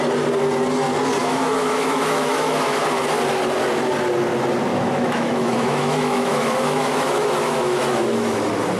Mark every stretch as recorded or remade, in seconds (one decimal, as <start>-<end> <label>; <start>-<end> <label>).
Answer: 0.0-1.2 recorded; 1.2-2.8 remade; 2.8-4.7 recorded; 4.7-8.4 remade; 8.4-8.8 recorded